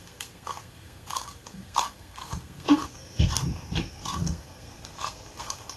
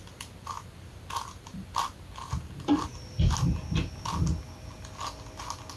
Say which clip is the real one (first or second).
second